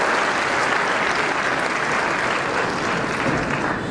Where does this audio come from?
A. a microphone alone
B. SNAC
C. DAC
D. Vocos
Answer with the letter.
A